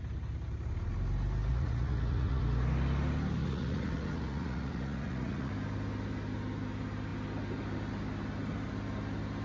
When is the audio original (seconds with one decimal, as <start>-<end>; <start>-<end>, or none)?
0.0-1.5; 2.4-3.4; 5.5-9.4